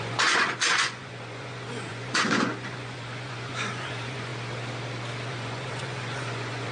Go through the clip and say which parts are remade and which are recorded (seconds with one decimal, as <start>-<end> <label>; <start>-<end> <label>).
0.0-4.3 remade; 4.3-5.3 recorded; 5.3-6.7 remade